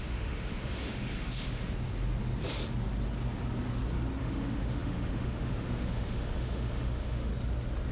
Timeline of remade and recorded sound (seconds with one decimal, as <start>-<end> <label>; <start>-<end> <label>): 0.0-1.6 remade; 1.6-4.2 recorded; 4.2-7.3 remade; 7.3-7.9 recorded